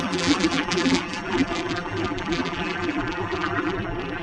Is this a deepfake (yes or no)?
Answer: yes